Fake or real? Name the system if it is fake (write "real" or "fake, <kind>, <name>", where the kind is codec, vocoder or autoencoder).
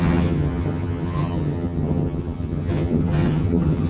fake, vocoder, HiFi-GAN